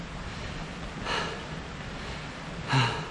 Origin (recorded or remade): recorded